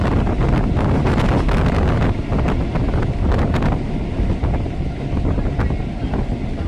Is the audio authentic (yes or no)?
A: yes